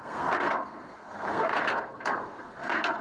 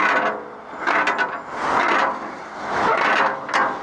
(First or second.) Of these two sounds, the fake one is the first